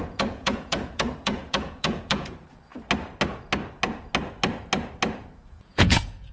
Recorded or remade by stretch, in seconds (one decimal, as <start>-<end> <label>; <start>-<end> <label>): 0.0-2.7 remade; 2.7-5.5 recorded; 5.5-6.3 remade